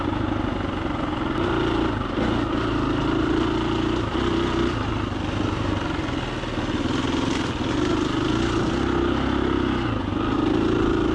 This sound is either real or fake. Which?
real